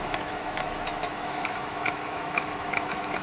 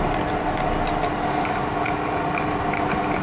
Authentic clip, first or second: second